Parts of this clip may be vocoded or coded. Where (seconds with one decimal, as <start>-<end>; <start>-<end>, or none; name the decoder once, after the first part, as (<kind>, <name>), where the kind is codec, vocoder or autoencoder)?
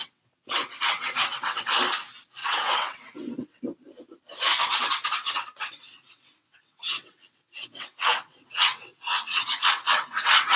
0.0-1.7 (vocoder, WaveNeXt); 2.4-3.6; 5.2-10.6